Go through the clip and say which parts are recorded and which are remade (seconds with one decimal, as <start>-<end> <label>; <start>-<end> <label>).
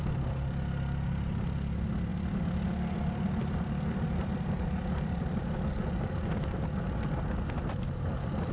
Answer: 0.0-2.1 recorded; 2.1-5.9 remade; 5.9-8.5 recorded